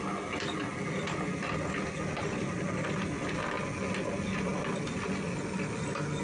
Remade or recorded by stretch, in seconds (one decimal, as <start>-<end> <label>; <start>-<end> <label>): 0.0-0.7 recorded; 0.7-2.6 remade; 2.6-6.2 recorded